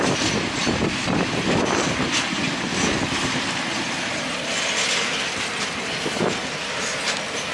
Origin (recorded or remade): recorded